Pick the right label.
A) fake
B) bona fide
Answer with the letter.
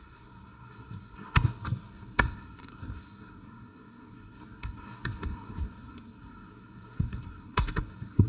A